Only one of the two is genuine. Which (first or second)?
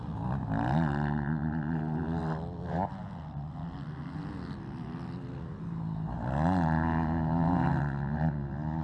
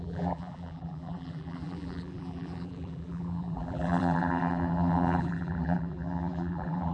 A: first